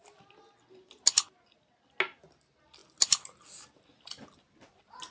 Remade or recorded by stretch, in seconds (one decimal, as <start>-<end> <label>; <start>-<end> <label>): 0.0-5.1 recorded